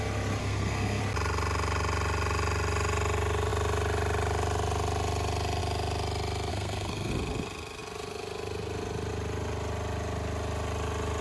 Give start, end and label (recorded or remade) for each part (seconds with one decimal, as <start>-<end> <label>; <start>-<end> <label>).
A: 0.0-0.4 recorded; 0.4-1.0 remade; 1.0-6.5 recorded; 6.5-7.1 remade; 7.1-11.2 recorded